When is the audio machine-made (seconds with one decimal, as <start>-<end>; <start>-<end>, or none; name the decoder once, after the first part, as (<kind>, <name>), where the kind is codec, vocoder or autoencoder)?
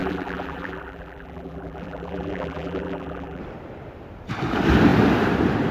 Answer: 0.0-3.4 (vocoder, BigVGAN v2)